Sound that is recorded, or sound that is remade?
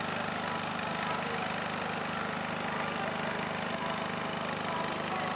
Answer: recorded